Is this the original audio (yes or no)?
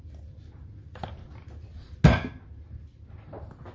yes